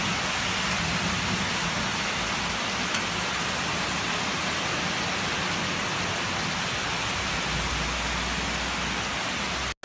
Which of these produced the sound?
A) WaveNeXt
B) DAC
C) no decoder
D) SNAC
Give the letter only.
C